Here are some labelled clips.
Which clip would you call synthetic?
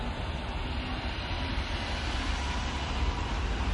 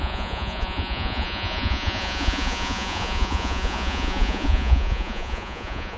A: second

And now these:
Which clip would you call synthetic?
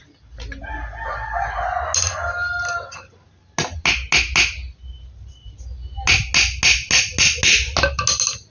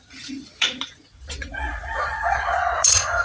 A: second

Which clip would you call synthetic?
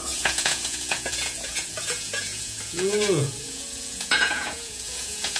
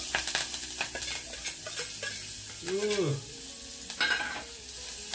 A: first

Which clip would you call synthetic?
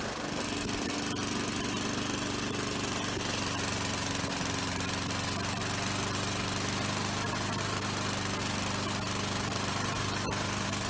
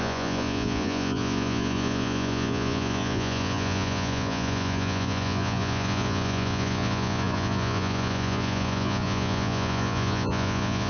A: second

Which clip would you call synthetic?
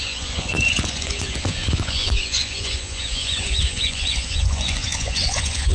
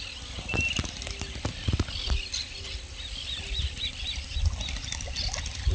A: first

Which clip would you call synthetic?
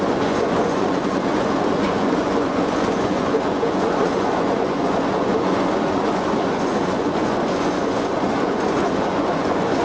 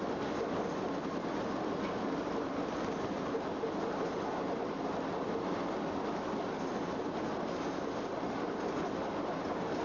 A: first